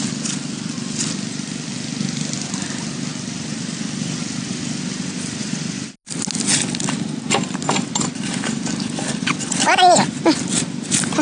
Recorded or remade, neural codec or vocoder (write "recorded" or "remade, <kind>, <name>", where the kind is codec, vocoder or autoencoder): recorded